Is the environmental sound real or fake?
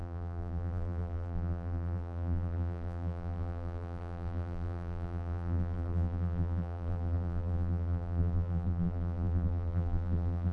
fake